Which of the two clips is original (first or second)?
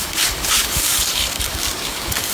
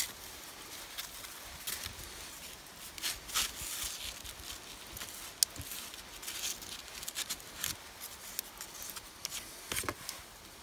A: second